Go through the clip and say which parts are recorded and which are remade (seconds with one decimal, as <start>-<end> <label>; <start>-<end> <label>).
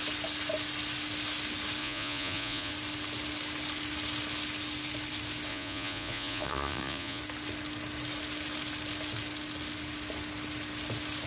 0.0-1.8 recorded; 1.8-2.7 remade; 2.7-5.5 recorded; 5.5-7.2 remade; 7.2-11.3 recorded